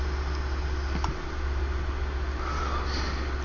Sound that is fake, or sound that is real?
real